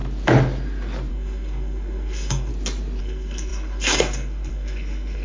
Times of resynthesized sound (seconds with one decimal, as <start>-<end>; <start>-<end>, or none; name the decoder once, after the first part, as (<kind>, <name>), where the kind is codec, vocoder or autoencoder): 1.1-2.5 (codec, SNAC); 3.0-5.2